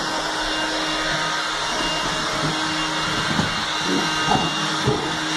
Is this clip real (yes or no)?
yes